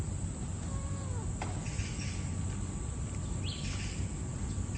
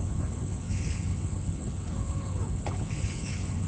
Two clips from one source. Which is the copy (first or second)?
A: second